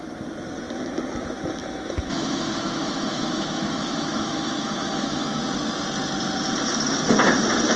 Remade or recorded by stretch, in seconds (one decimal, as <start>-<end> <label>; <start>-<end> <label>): 0.0-1.6 recorded; 1.6-5.4 remade; 5.4-7.8 recorded